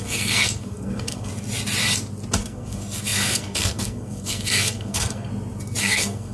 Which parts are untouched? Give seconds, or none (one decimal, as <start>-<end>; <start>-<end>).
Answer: 1.3-2.4; 5.3-5.8